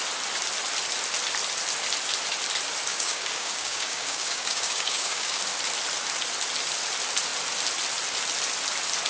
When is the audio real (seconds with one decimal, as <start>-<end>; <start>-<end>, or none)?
0.0-2.9; 5.4-9.1